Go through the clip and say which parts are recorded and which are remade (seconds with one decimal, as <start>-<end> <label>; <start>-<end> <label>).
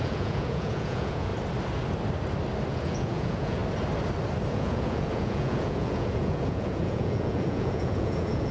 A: 0.0-1.3 remade; 1.3-2.7 recorded; 2.7-3.6 remade; 3.6-4.5 recorded; 4.5-8.5 remade